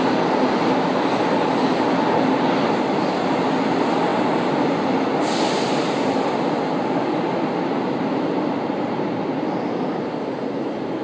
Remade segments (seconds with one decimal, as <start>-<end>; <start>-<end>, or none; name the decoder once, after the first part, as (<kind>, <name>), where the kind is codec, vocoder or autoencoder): none